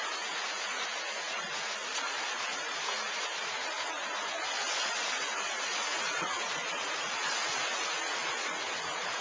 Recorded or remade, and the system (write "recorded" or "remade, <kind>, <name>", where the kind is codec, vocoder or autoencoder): remade, vocoder, Vocos